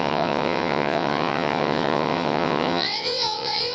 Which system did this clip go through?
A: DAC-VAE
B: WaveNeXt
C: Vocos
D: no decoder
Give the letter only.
B